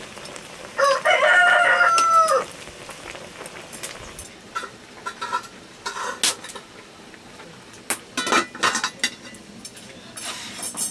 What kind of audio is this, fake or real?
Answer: real